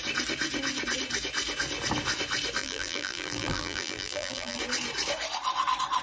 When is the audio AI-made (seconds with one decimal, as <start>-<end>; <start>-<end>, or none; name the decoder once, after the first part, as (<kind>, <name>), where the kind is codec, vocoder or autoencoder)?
2.6-4.6 (vocoder, BigVGAN v2)

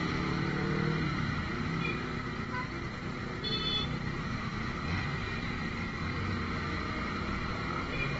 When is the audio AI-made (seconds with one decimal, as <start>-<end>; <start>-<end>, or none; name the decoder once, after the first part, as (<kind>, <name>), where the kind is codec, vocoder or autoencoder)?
1.1-1.9 (vocoder, BigVGAN v2); 3.5-6.3

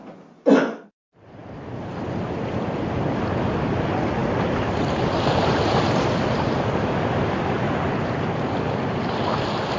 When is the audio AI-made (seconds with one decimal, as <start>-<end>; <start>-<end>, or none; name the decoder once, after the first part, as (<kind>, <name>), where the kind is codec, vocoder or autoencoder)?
4.2-5.9 (vocoder, BigVGAN v2)

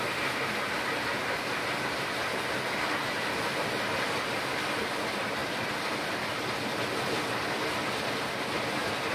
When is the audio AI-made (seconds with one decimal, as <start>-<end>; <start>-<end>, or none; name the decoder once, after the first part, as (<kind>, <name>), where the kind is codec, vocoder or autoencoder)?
none

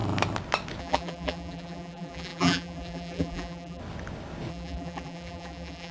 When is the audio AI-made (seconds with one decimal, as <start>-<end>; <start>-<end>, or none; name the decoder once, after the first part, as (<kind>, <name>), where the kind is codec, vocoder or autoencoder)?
0.8-3.8 (vocoder, BigVGAN v2); 4.5-5.9